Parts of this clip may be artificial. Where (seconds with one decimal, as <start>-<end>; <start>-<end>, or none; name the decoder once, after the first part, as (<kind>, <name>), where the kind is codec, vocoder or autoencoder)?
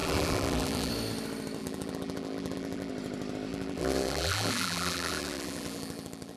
0.0-0.9 (vocoder, BigVGAN v2); 1.6-2.9; 3.5-6.4